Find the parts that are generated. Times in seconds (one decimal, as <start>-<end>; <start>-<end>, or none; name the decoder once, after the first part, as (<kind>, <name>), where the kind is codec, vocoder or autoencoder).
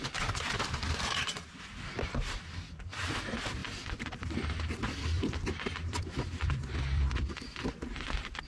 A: 0.0-8.5 (vocoder, BigVGAN v2)